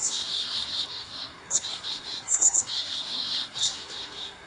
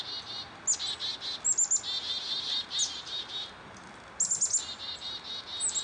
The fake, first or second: first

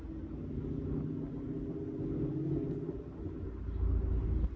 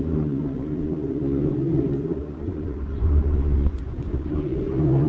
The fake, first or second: second